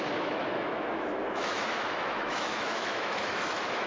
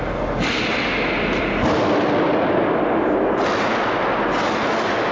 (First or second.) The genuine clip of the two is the second